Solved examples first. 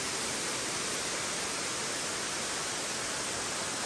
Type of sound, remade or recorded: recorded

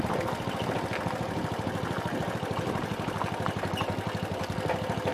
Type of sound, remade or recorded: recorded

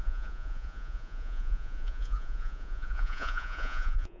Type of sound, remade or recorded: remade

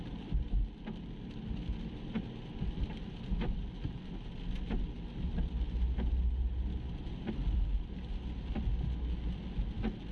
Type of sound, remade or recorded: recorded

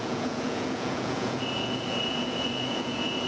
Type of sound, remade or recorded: remade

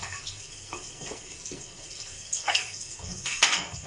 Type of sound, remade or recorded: remade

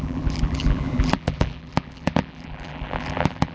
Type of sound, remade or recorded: remade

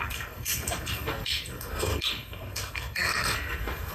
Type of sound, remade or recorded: remade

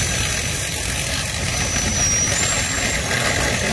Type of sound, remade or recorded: recorded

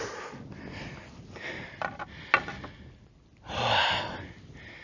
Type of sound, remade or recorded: recorded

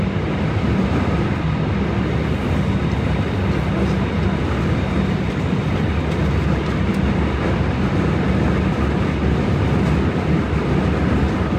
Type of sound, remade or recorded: recorded